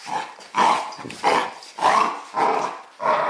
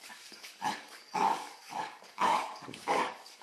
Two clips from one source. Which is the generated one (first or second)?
second